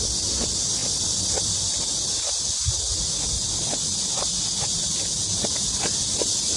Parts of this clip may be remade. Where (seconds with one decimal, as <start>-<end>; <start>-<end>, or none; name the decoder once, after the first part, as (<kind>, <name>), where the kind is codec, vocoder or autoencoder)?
1.9-5.9 (vocoder, BigVGAN v2)